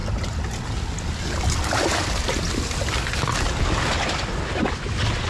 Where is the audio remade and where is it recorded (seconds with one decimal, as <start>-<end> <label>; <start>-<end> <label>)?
0.0-5.3 recorded